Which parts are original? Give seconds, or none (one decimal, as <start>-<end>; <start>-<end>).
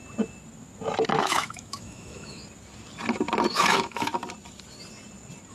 0.0-1.2; 2.4-3.5; 4.1-5.5